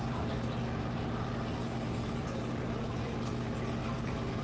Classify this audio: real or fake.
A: real